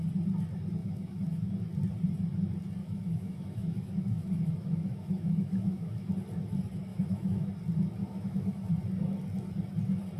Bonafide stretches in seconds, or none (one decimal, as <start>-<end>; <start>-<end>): 0.0-0.8; 1.5-2.8; 6.1-6.9; 7.5-8.0; 8.7-10.2